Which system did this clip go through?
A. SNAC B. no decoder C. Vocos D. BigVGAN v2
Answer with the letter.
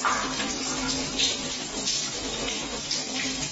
B